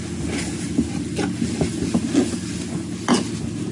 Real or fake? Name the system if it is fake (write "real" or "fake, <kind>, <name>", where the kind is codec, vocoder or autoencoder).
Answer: real